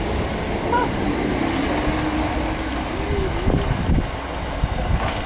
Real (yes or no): yes